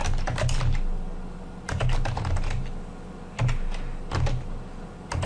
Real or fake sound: real